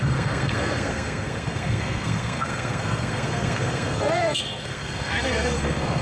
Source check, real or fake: fake